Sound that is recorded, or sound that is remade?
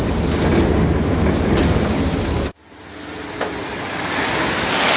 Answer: recorded